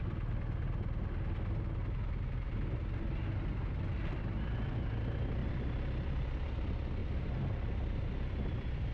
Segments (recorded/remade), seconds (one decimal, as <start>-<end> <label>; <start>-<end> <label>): 0.0-5.4 recorded; 5.4-6.5 remade; 6.5-7.0 recorded; 7.0-8.1 remade; 8.1-8.9 recorded